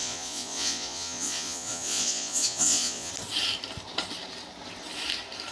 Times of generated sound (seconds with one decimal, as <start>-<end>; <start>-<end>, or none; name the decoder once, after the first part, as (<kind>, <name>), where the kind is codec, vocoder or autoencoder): 0.0-3.1 (vocoder, Vocos)